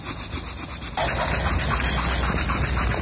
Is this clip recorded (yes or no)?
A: yes